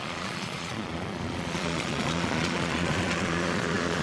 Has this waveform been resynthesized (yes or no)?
yes